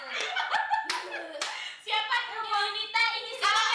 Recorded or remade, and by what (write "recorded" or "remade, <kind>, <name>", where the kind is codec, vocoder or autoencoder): remade, vocoder, Vocos